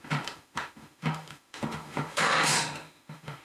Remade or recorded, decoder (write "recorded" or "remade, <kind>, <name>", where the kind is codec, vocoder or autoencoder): remade, autoencoder, DAC-VAE